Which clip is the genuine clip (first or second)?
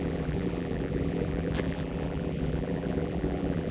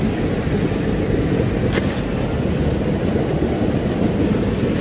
second